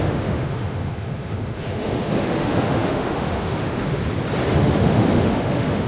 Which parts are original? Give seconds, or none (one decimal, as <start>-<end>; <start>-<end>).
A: 4.0-4.6